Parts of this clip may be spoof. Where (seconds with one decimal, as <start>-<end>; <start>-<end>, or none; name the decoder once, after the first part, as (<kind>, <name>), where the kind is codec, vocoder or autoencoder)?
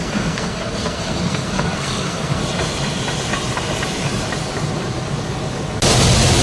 0.0-2.4 (codec, SNAC)